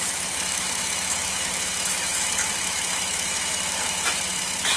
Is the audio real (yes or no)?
no